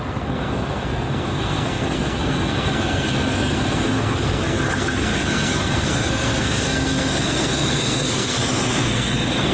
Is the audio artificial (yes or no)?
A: yes